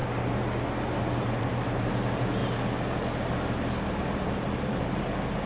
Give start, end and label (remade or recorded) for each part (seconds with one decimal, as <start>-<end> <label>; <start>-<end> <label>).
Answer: 0.0-1.0 recorded; 1.0-2.4 remade; 2.4-3.9 recorded; 3.9-5.5 remade